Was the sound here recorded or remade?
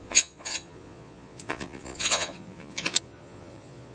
remade